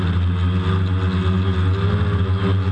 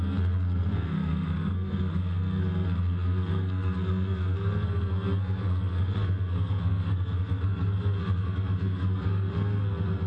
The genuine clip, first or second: first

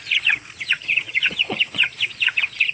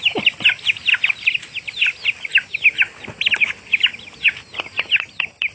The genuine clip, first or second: second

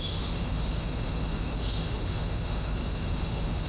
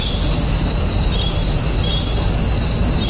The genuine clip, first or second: second